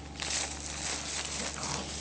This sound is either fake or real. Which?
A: real